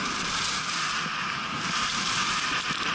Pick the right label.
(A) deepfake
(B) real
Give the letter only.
B